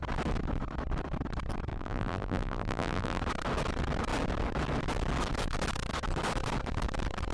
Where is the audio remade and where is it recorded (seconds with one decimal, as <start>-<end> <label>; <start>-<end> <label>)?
0.0-1.7 recorded; 1.7-3.2 remade; 3.2-7.3 recorded